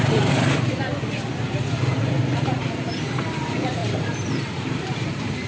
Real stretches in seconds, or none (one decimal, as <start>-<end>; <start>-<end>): 0.9-1.9